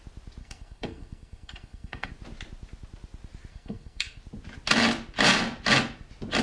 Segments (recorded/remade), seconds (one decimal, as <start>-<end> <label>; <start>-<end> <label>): 0.0-0.4 recorded; 0.4-2.1 remade; 2.1-3.5 recorded; 3.5-4.2 remade; 4.2-6.4 recorded